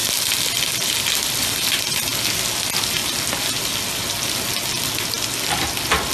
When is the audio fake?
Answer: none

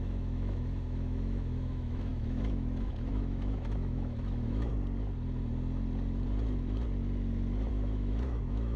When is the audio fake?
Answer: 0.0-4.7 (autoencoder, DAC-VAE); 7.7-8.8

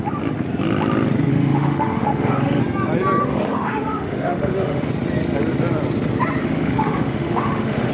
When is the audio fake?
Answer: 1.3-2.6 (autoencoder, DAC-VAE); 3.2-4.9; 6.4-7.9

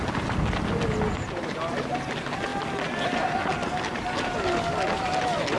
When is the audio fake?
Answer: none

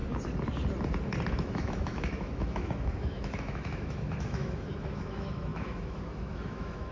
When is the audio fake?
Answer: 1.3-6.9 (autoencoder, DAC-VAE)